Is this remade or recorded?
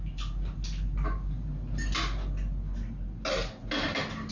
recorded